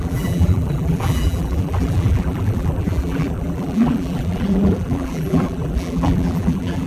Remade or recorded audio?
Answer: remade